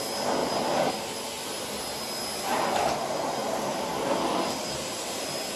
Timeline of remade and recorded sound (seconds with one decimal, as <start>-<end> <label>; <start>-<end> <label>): 0.0-0.4 recorded; 0.4-0.9 remade; 0.9-3.4 recorded; 3.4-3.9 remade; 3.9-5.6 recorded